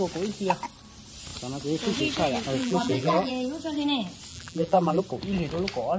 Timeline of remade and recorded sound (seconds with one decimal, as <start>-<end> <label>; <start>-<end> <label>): 0.0-2.6 recorded; 2.6-3.3 remade; 3.3-4.3 recorded; 4.3-5.0 remade; 5.0-6.0 recorded